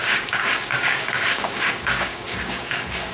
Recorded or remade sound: remade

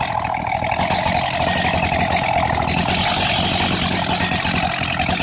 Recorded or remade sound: recorded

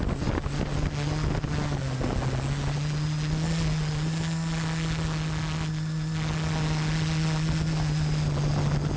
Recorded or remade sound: recorded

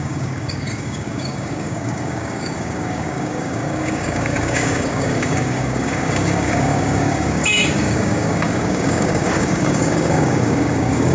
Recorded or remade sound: remade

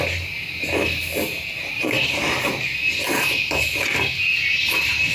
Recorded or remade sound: recorded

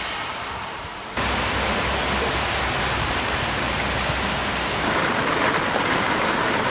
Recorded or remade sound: recorded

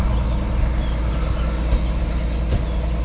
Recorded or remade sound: recorded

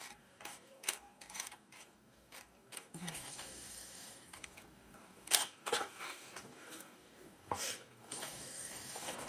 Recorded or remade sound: remade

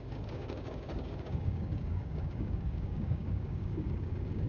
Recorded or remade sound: remade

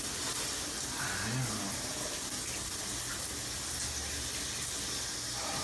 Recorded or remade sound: recorded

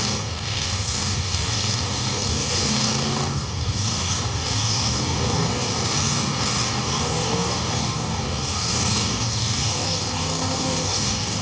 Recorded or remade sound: remade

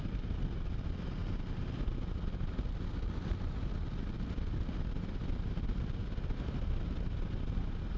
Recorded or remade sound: recorded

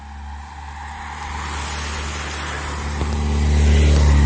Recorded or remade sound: recorded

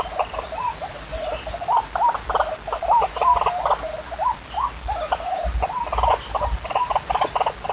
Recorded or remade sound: recorded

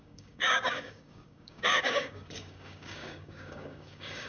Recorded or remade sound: remade